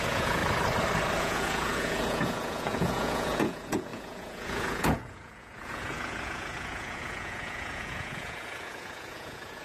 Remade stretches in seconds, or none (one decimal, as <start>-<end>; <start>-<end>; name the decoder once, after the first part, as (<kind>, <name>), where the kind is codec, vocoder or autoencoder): 0.0-0.4 (vocoder, Vocos); 1.2-9.6